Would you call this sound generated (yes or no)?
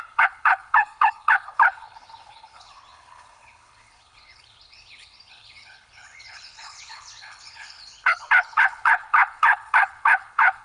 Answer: yes